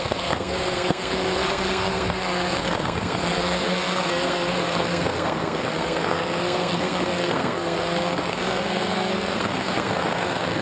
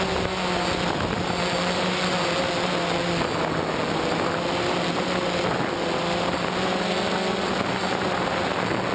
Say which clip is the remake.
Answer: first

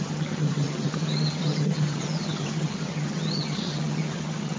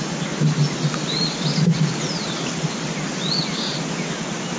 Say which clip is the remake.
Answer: first